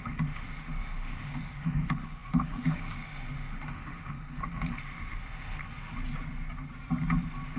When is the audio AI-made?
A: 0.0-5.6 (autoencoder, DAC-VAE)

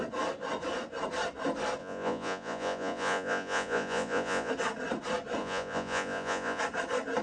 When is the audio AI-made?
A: 1.8-4.5 (vocoder, Vocos); 5.4-6.6

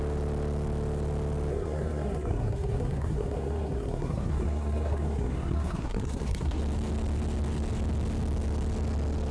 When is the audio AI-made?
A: 1.5-6.6 (codec, SNAC)

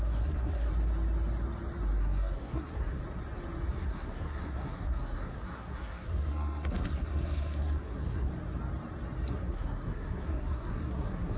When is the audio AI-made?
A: 0.0-0.7 (codec, SNAC); 2.0-3.0; 3.7-8.3; 9.3-11.4